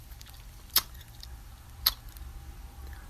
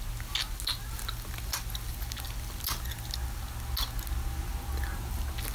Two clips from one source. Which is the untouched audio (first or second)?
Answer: second